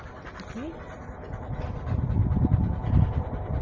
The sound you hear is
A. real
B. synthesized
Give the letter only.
A